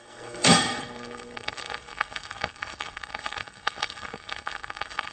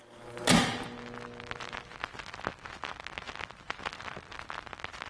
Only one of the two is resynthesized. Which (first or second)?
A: first